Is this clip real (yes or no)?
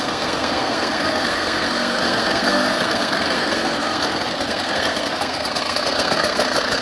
no